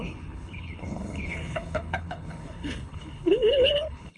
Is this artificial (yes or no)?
yes